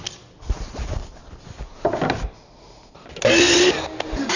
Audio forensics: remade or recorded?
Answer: recorded